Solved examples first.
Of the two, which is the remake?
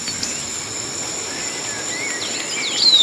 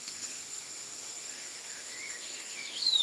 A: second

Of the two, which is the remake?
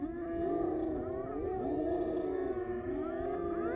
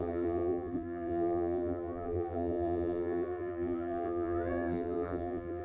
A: second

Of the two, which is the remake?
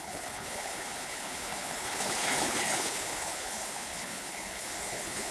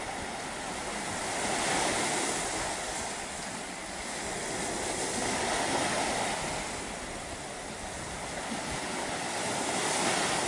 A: first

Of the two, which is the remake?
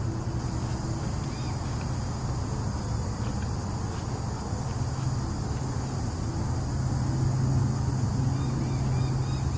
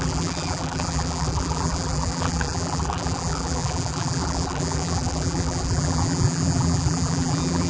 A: second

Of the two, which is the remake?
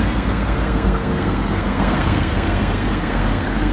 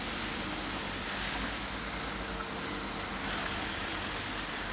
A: first